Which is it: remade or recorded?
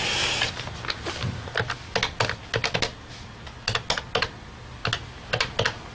recorded